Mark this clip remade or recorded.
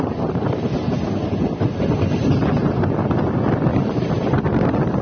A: recorded